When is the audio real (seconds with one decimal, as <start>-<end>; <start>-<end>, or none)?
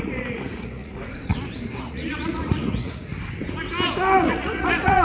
1.3-1.8; 3.1-4.2